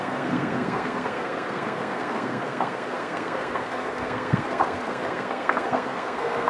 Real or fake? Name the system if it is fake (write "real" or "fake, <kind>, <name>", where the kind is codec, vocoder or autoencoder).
fake, codec, SNAC